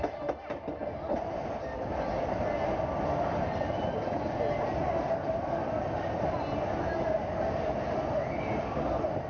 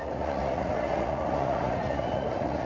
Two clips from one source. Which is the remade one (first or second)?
second